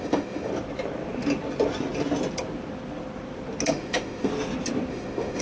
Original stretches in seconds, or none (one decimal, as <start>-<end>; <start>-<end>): 0.5-3.7; 4.3-4.9